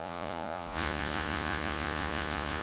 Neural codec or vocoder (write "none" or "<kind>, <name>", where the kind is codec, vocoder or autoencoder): vocoder, Vocos